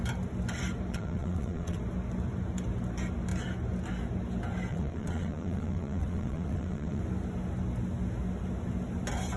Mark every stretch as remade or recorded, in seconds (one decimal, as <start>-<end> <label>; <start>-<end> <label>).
0.0-0.9 recorded; 0.9-1.8 remade; 1.8-4.7 recorded; 4.7-7.0 remade; 7.0-9.4 recorded